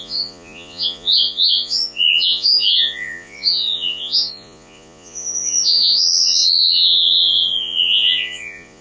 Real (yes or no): no